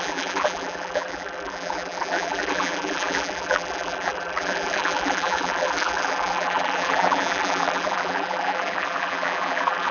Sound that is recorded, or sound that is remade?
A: remade